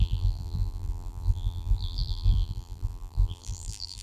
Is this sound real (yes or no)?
no